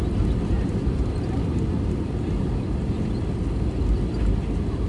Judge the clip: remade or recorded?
recorded